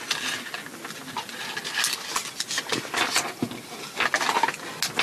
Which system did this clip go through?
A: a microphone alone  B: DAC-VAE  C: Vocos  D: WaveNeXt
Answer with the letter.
A